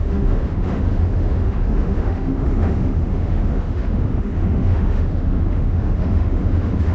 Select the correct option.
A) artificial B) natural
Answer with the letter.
A